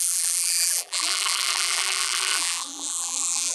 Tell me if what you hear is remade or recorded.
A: remade